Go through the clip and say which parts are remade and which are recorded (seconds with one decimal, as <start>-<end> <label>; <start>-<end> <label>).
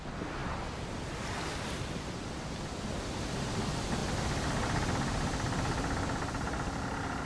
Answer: 0.0-7.3 recorded